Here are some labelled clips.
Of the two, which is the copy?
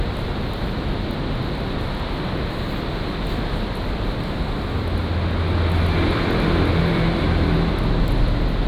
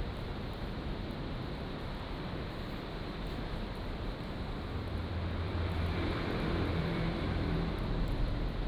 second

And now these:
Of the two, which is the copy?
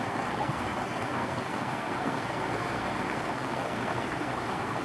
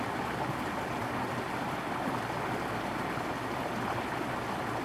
first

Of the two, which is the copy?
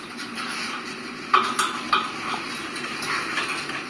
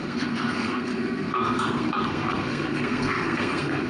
second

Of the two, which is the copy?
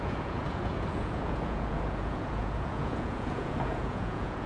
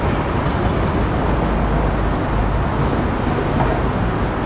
first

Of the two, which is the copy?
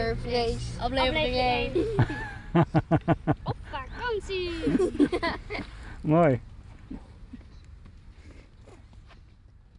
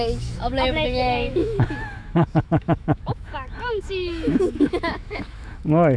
second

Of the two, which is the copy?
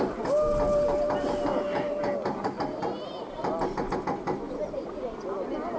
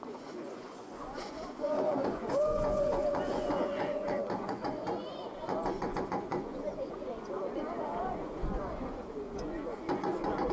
second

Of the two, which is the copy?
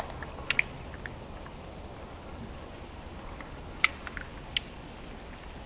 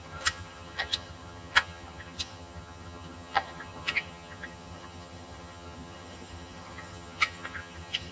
second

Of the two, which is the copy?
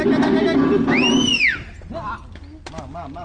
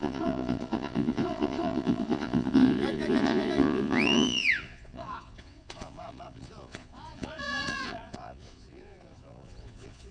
second